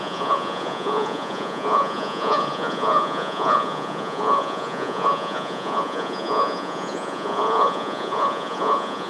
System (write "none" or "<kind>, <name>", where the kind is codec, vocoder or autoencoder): vocoder, Vocos